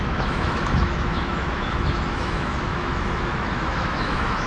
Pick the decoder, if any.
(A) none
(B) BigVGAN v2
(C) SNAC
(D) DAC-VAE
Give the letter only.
D